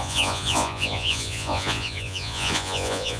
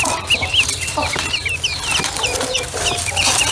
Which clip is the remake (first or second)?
first